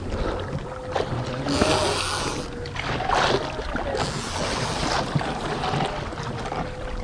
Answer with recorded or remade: recorded